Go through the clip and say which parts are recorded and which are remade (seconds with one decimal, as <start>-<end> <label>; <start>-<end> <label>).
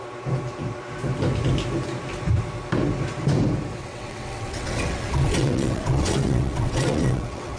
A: 0.0-3.8 recorded; 3.8-7.6 remade